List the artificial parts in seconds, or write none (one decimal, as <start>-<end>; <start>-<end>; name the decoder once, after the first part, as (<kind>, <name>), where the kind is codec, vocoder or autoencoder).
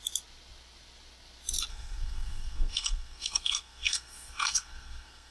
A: 1.7-5.3 (codec, SNAC)